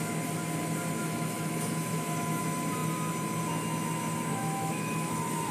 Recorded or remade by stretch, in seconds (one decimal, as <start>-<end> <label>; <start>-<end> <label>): 0.0-1.0 recorded; 1.0-2.4 remade; 2.4-4.3 recorded; 4.3-5.5 remade